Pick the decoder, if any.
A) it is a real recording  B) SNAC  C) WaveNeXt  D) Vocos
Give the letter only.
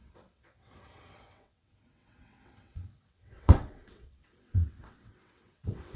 C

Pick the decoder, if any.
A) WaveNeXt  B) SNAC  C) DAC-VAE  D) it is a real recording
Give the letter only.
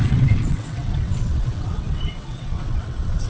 A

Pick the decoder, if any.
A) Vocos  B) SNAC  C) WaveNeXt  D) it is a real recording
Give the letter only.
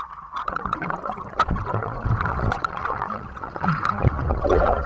C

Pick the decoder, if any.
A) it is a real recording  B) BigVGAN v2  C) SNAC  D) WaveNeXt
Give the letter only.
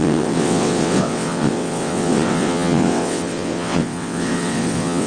D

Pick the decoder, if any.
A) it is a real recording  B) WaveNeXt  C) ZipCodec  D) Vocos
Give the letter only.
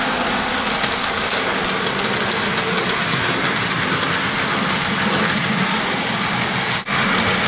A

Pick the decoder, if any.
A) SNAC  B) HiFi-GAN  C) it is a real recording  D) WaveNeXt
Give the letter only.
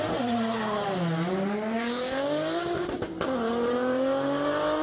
C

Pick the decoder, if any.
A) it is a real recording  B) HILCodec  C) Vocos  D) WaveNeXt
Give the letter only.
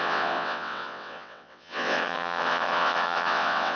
D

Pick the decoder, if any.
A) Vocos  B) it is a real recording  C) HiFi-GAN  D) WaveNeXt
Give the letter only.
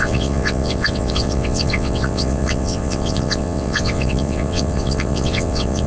D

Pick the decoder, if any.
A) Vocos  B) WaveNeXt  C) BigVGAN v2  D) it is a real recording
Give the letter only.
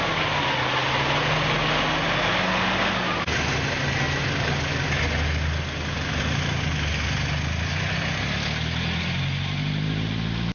D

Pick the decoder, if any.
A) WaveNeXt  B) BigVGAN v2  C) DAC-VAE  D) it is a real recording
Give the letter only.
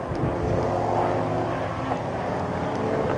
D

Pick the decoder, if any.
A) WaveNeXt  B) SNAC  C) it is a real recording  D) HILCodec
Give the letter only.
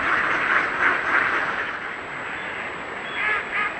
C